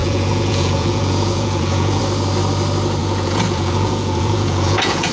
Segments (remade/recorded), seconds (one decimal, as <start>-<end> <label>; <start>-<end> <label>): 0.0-2.0 remade; 2.0-3.0 recorded; 3.0-5.1 remade